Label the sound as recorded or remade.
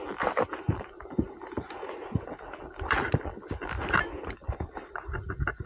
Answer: recorded